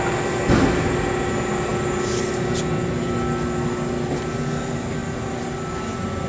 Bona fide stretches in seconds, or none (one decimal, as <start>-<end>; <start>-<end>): 0.0-6.3

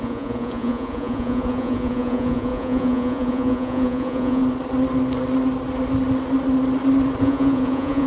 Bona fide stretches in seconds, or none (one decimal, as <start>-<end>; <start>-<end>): 4.4-7.2

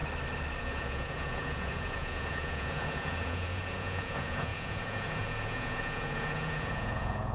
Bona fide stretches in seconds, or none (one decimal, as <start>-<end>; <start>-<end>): 0.0-0.6